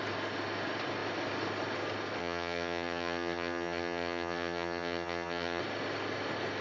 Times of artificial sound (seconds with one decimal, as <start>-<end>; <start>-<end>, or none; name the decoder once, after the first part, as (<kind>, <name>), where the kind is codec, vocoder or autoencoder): 2.2-5.6 (vocoder, HiFi-GAN)